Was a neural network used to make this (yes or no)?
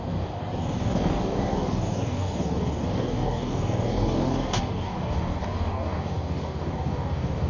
yes